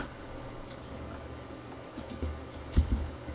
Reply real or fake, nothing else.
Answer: fake